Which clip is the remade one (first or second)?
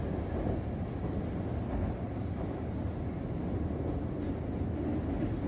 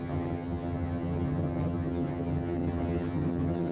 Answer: second